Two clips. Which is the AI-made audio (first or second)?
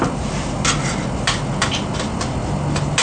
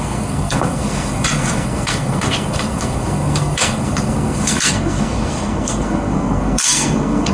second